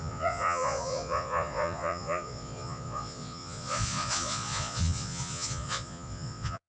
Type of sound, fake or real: fake